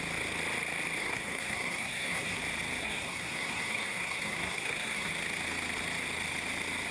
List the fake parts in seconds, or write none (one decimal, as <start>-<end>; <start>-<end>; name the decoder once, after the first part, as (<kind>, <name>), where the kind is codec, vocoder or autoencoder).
1.0-2.4 (codec, SNAC); 2.8-5.1